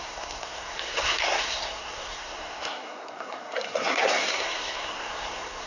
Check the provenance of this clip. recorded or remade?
remade